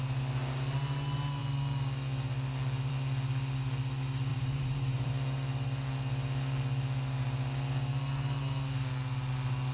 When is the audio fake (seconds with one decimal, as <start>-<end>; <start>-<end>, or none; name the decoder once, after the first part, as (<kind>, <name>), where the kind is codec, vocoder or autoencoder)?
4.3-5.1 (vocoder, BigVGAN v2)